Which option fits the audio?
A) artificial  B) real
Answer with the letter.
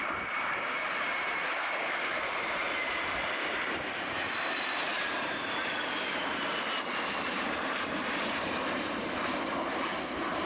A